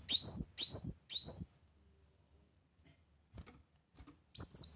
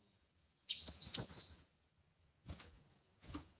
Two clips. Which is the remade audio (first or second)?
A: second